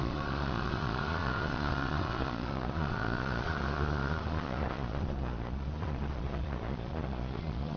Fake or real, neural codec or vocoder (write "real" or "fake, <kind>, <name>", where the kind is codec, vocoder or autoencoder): fake, vocoder, Vocos